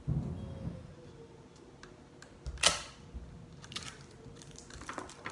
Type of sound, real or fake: real